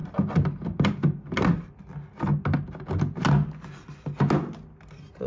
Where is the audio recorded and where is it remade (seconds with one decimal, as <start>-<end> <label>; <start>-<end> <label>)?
0.0-5.3 recorded

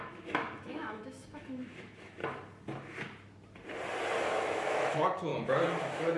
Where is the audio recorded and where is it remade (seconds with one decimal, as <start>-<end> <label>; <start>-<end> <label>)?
0.0-2.2 remade; 2.2-4.2 recorded; 4.2-5.3 remade; 5.3-5.8 recorded; 5.8-6.2 remade

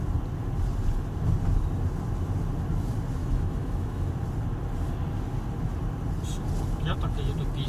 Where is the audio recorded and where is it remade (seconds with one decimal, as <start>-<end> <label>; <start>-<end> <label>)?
0.0-3.2 recorded; 3.2-4.1 remade; 4.1-7.7 recorded